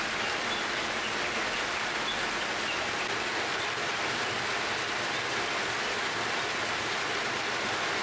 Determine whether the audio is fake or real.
real